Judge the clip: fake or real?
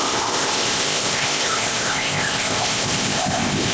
fake